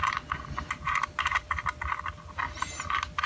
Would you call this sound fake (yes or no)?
no